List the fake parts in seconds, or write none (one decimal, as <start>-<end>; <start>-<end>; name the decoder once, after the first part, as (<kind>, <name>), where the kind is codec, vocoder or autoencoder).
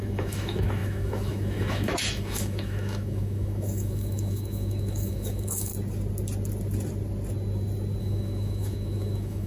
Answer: 0.0-5.7 (autoencoder, DAC-VAE); 8.0-9.5